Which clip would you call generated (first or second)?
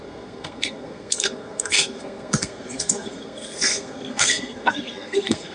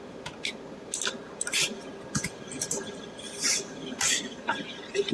first